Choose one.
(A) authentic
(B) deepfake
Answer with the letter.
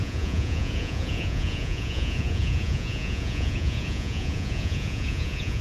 B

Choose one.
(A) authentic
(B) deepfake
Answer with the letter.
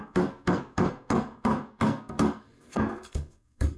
B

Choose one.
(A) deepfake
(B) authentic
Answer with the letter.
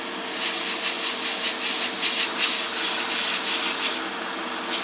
B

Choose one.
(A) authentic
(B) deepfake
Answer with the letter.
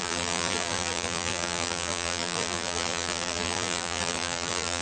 B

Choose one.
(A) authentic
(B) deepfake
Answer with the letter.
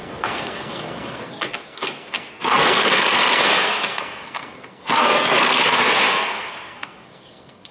B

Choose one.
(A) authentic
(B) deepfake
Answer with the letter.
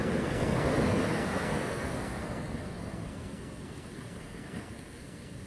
B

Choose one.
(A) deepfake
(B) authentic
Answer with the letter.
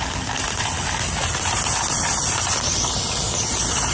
B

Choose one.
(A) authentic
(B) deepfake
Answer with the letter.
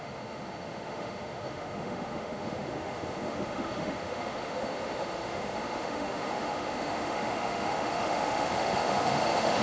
B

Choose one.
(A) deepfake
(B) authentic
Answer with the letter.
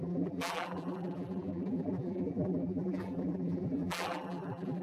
A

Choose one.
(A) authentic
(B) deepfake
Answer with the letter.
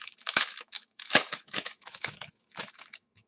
B